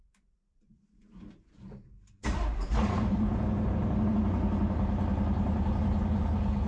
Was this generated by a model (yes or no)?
yes